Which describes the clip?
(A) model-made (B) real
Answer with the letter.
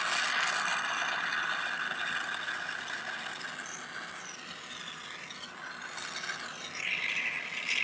B